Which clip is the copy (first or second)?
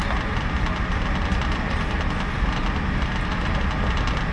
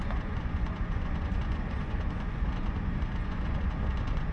second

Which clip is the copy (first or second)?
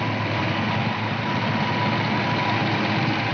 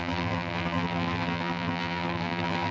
second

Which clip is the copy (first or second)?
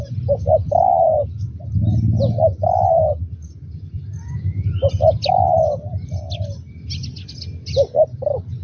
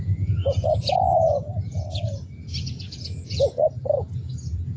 second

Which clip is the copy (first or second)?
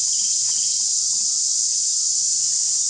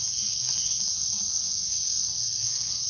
second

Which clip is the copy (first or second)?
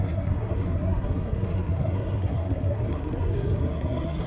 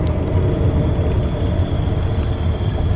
first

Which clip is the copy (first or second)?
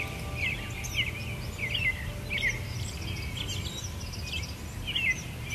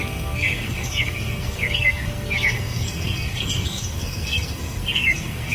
second